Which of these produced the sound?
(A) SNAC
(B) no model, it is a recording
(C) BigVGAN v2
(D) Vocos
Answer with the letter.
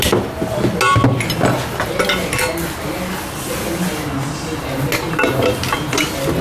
B